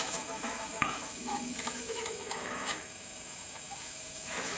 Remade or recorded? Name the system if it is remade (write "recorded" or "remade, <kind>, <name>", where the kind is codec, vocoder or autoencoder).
remade, autoencoder, DAC-VAE